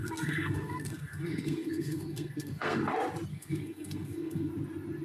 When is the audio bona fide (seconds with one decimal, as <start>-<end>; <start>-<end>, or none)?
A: 2.8-3.3; 4.5-5.0